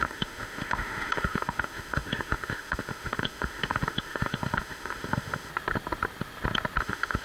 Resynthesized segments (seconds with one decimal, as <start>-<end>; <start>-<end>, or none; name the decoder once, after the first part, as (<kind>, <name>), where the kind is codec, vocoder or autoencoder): 0.0-5.5 (autoencoder, DAC-VAE); 6.8-7.2